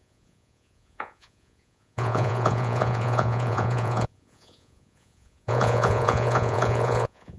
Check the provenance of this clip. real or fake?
fake